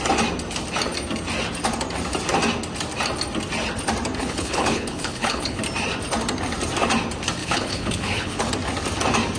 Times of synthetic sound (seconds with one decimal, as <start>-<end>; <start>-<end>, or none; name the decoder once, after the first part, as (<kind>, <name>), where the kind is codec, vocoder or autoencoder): 4.2-5.6 (codec, HILCodec); 7.4-8.5